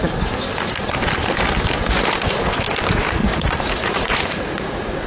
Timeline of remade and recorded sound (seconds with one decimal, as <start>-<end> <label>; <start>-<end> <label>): 0.0-3.2 recorded; 3.2-5.1 remade